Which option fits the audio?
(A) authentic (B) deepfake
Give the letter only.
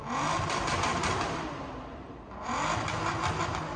A